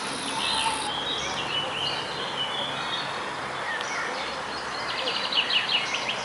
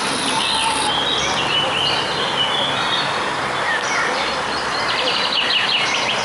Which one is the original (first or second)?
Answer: first